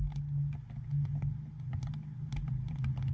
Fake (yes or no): no